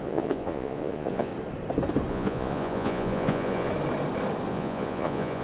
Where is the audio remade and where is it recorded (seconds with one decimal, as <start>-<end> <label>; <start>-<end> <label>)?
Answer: 0.0-1.3 remade; 1.3-2.1 recorded; 2.1-3.7 remade; 3.7-4.5 recorded; 4.5-5.4 remade